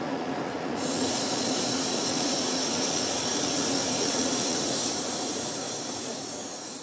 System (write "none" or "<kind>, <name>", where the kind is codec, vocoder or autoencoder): vocoder, Vocos